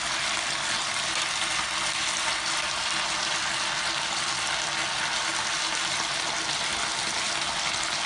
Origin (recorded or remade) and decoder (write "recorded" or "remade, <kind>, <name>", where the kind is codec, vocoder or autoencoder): recorded